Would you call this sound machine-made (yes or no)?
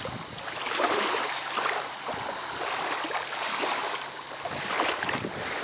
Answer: no